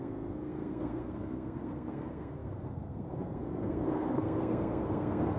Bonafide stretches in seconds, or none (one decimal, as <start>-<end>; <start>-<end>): none